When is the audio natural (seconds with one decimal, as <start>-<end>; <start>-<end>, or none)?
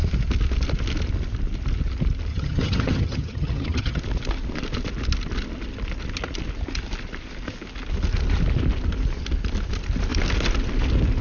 0.0-2.3; 4.0-11.2